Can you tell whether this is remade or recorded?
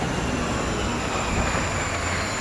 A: recorded